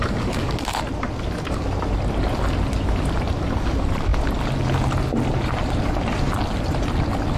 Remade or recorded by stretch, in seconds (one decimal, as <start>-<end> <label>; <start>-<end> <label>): 0.0-0.8 remade; 0.8-7.4 recorded